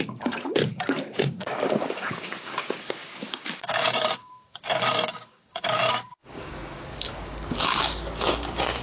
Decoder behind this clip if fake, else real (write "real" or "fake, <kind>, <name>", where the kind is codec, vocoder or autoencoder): fake, codec, DAC